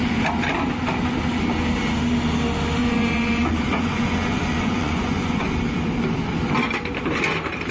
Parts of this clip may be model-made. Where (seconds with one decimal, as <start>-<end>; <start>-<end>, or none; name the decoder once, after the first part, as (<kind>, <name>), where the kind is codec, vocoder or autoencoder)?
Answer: 2.8-5.5 (vocoder, Vocos)